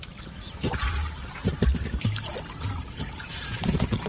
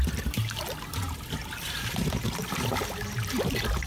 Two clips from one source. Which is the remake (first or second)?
first